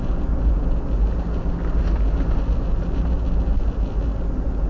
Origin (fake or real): real